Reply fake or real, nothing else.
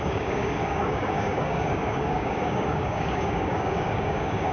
fake